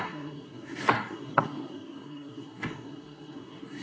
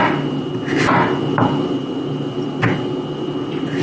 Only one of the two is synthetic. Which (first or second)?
first